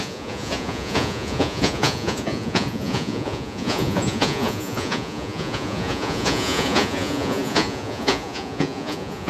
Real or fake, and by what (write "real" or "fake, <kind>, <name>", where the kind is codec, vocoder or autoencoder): fake, vocoder, Vocos